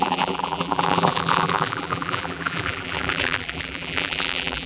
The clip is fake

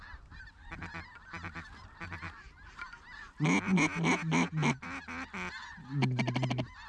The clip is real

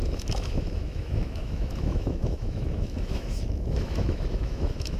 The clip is fake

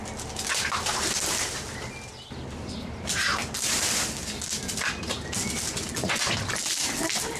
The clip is real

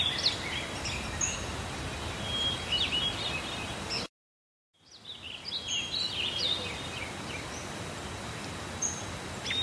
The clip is real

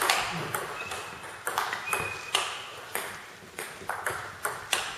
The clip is real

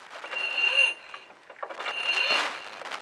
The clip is real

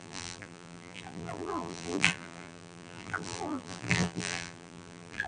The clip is fake